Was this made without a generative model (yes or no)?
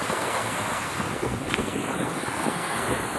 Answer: no